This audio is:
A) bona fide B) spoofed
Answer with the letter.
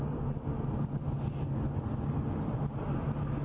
A